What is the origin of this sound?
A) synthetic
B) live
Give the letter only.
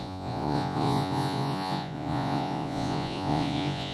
A